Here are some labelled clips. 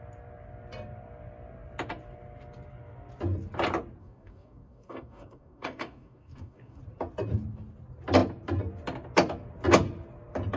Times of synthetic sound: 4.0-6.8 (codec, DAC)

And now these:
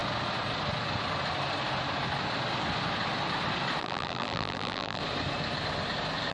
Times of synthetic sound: 3.8-5.0 (vocoder, BigVGAN v2)